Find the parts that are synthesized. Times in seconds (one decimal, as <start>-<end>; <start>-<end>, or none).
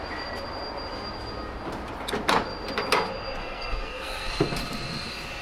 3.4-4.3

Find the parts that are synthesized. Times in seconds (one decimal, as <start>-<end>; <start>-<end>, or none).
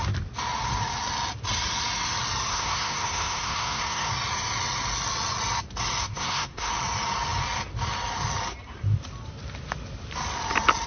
2.5-4.1; 6.0-6.7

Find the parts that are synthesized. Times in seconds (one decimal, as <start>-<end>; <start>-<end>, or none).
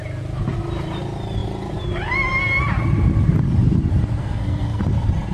4.2-4.8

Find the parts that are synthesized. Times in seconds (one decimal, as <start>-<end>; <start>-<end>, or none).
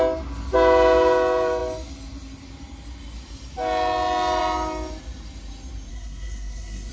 5.9-6.9